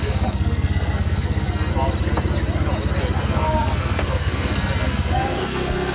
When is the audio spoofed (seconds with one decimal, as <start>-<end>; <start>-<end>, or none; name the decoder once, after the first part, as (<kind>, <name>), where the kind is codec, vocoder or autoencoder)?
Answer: 0.0-1.7 (codec, SNAC); 3.2-5.9